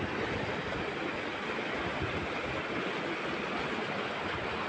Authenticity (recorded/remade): recorded